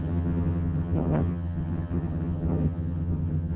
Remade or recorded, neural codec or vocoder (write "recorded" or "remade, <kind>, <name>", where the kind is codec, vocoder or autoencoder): remade, vocoder, HiFi-GAN